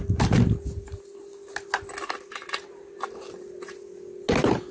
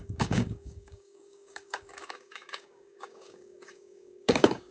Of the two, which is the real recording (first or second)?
first